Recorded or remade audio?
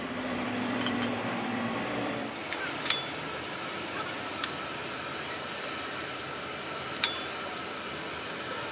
remade